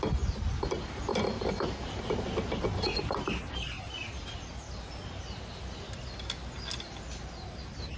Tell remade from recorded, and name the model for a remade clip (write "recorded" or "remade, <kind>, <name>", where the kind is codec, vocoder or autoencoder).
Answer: recorded